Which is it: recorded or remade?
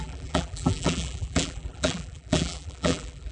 remade